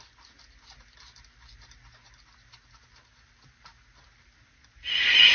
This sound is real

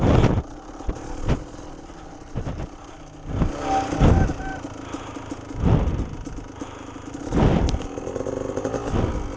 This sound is real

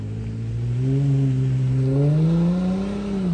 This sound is real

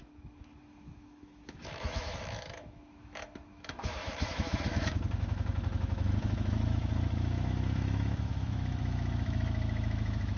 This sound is fake